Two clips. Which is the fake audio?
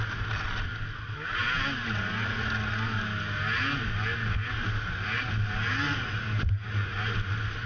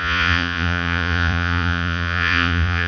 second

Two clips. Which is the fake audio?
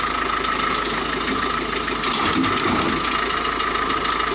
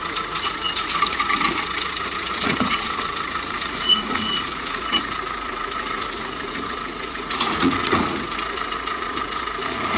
second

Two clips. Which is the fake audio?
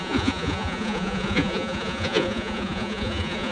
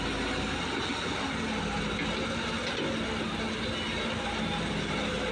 first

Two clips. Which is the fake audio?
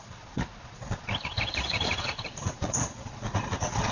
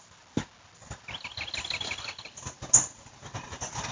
first